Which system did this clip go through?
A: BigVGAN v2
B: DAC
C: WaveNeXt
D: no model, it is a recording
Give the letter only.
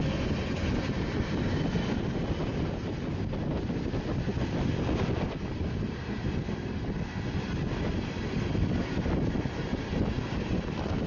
D